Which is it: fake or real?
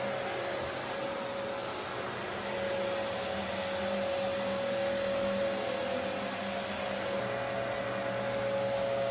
real